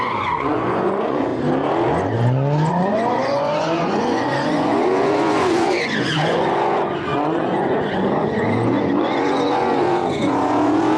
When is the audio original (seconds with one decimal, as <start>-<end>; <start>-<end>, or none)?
1.3-2.7